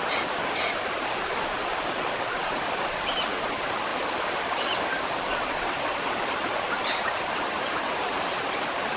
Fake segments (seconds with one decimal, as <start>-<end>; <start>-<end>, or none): 2.4-2.9; 3.9-5.1